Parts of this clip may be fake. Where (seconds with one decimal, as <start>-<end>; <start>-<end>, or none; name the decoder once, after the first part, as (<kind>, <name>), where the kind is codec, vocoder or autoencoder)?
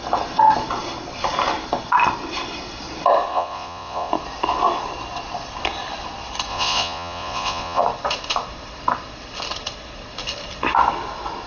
3.3-4.1 (vocoder, Vocos); 6.5-7.8